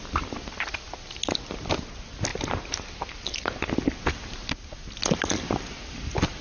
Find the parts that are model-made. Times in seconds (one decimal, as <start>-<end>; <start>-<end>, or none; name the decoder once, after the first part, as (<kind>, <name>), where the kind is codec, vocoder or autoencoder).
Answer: none